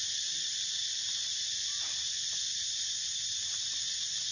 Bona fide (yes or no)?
yes